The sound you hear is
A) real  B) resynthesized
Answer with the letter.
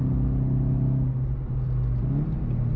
A